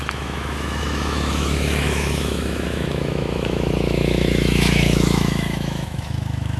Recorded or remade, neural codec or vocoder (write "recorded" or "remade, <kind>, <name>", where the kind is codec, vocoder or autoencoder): remade, autoencoder, DAC-VAE